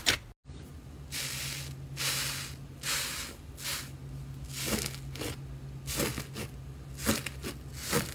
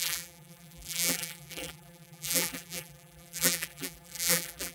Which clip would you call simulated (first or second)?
second